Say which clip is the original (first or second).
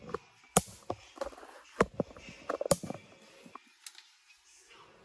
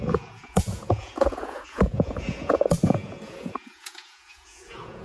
first